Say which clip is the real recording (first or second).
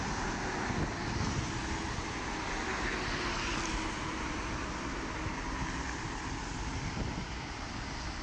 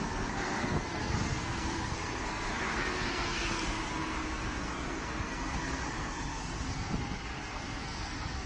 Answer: first